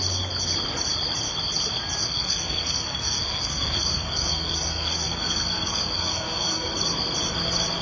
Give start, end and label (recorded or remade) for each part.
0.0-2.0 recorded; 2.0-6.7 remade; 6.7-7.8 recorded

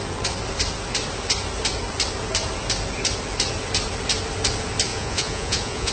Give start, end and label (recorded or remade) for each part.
0.0-4.9 recorded; 4.9-5.9 remade

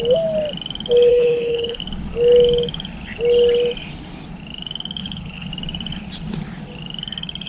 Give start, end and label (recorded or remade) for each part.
0.0-1.1 recorded; 1.1-1.8 remade; 1.8-5.0 recorded; 5.0-5.5 remade; 5.5-7.5 recorded

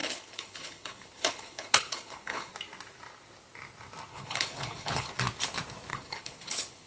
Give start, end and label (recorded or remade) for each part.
0.0-2.5 remade; 2.5-4.1 recorded; 4.1-5.1 remade; 5.1-5.9 recorded; 5.9-6.9 remade

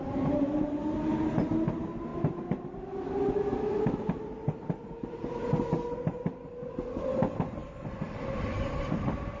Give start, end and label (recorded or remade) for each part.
0.0-9.4 recorded

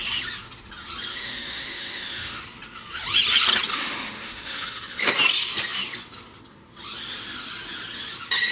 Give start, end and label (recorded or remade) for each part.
0.0-1.1 recorded; 1.1-2.4 remade; 2.4-3.7 recorded; 3.7-5.0 remade; 5.0-8.5 recorded

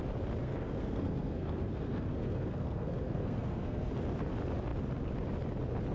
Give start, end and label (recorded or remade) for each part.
0.0-0.4 recorded; 0.4-3.9 remade; 3.9-5.9 recorded